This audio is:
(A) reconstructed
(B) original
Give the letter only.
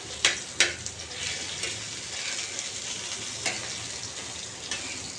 B